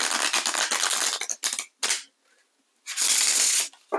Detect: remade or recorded recorded